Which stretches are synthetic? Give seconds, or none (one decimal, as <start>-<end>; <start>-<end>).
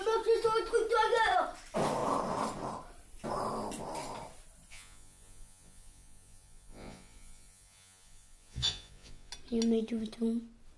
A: 4.7-9.3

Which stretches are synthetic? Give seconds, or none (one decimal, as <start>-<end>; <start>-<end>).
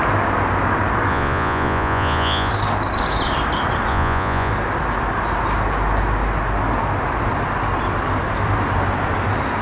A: 1.1-2.5; 3.9-4.5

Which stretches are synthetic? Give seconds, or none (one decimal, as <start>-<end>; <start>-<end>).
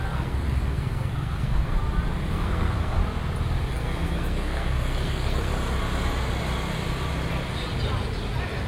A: 0.0-1.8; 2.3-3.0; 3.7-5.5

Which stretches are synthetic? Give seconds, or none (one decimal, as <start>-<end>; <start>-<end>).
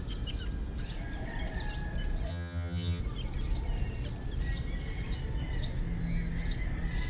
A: 2.3-3.0